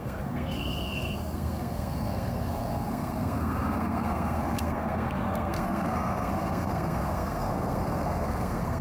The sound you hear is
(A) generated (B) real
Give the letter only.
A